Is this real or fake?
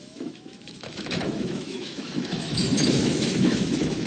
fake